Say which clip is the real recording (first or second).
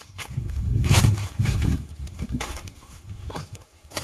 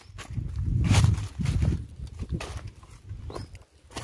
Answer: second